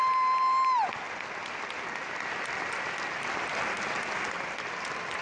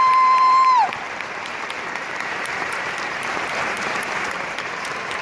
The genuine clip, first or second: first